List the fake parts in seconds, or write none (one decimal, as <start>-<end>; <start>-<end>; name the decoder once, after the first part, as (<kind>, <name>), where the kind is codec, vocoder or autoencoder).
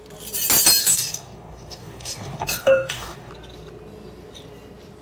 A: 0.8-3.3 (codec, DAC)